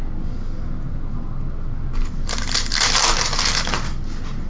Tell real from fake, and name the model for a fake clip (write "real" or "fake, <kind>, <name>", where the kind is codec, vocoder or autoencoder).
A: real